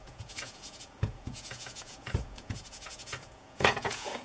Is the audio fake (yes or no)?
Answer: yes